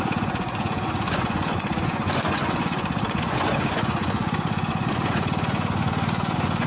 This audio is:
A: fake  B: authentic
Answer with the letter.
A